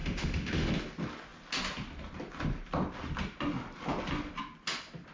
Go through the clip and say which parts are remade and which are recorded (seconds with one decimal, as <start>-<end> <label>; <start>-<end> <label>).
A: 0.0-0.7 remade; 0.7-5.1 recorded